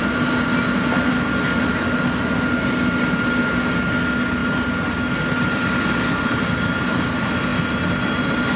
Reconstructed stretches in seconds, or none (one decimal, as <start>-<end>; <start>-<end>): none